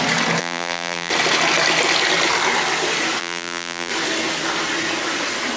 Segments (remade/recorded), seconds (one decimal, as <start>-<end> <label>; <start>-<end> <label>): 0.0-0.4 recorded; 0.4-1.1 remade; 1.1-3.2 recorded; 3.2-3.9 remade; 3.9-5.6 recorded